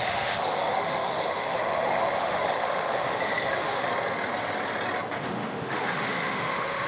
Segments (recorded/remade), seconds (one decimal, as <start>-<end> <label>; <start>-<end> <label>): 0.0-3.9 remade; 3.9-5.2 recorded; 5.2-6.9 remade